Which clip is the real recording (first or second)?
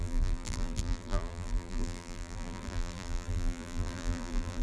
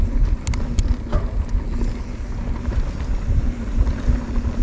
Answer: second